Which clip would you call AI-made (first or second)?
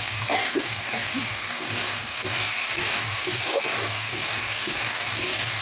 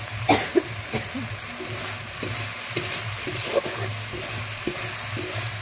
first